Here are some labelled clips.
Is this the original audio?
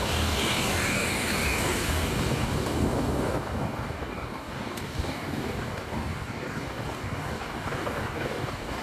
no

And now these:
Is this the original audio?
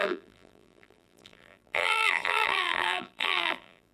no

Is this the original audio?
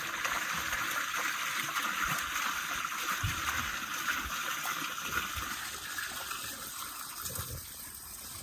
yes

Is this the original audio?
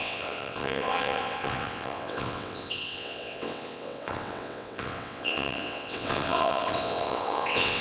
no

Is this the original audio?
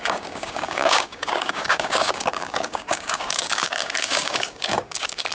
no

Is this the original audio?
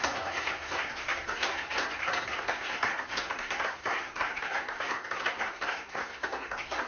no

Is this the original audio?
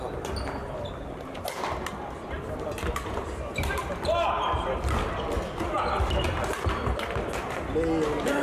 yes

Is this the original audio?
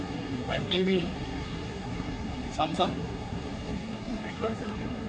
no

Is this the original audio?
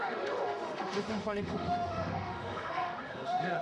no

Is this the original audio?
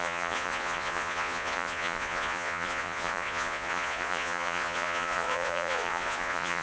no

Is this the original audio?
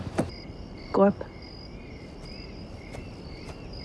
yes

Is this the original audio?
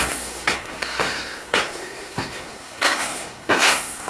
no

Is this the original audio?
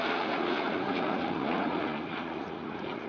no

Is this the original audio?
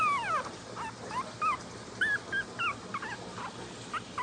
yes